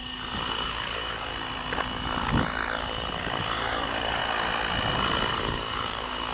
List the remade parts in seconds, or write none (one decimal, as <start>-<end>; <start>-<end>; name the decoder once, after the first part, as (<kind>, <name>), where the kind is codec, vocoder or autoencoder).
0.5-1.3 (codec, DAC); 3.2-4.2; 5.3-6.3